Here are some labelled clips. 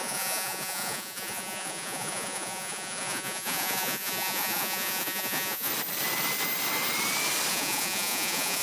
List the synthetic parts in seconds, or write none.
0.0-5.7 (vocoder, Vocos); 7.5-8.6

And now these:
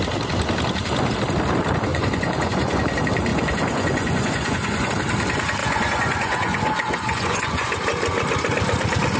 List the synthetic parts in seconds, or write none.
1.9-2.8 (vocoder, Vocos); 3.3-4.9; 5.6-7.7

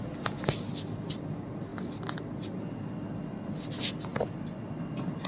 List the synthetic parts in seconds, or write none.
none

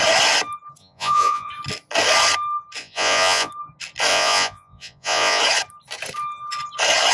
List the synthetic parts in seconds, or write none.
0.8-1.5 (vocoder, Vocos); 2.8-3.5; 4.1-5.4

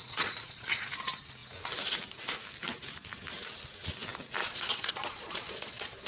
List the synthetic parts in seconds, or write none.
0.0-0.9 (vocoder, Vocos); 4.4-6.1